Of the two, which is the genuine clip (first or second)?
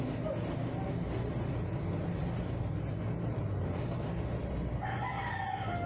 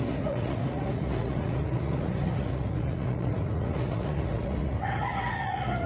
first